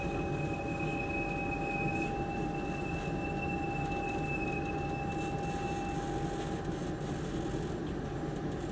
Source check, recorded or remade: recorded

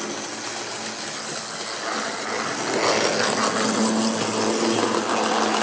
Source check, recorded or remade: recorded